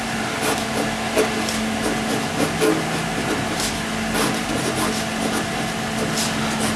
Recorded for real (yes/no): yes